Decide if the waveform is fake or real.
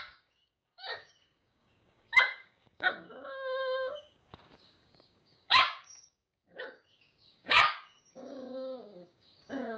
fake